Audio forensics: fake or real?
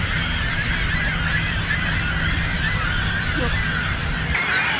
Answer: real